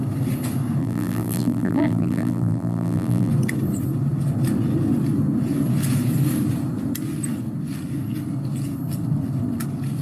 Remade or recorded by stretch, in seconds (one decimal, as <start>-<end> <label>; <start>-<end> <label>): 0.0-0.8 recorded; 0.8-3.3 remade; 3.3-10.0 recorded